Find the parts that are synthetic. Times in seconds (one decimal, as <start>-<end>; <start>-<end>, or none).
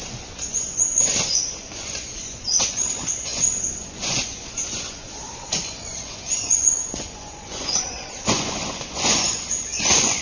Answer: 0.0-10.2